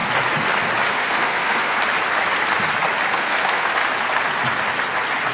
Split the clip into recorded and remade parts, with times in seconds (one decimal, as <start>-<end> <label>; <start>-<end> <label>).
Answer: 0.0-0.9 recorded; 0.9-1.8 remade; 1.8-3.1 recorded; 3.1-3.8 remade; 3.8-5.3 recorded